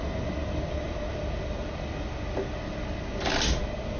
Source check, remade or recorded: recorded